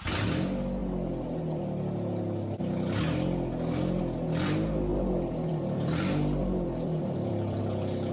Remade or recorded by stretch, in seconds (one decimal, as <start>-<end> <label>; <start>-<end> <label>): 0.0-4.9 recorded; 4.9-7.6 remade; 7.6-8.1 recorded